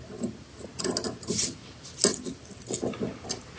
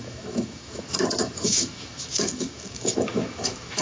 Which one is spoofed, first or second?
second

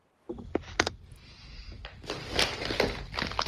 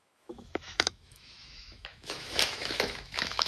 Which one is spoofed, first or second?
second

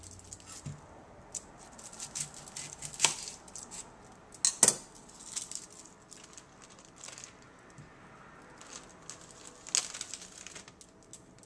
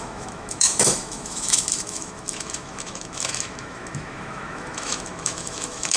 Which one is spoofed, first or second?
second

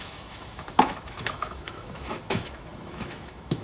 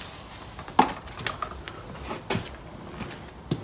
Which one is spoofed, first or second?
first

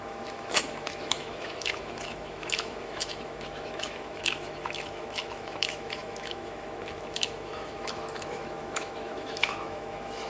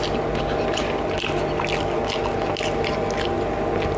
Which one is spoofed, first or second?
first